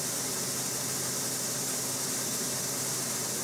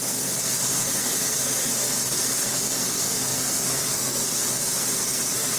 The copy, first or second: second